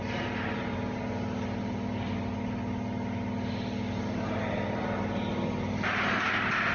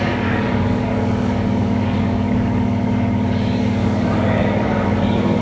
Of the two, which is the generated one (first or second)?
second